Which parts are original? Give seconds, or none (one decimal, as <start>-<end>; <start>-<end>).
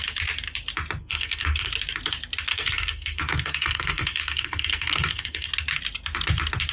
0.0-1.0; 1.7-2.5; 5.5-6.7